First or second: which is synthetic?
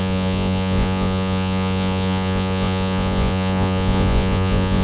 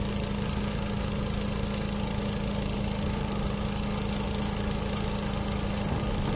first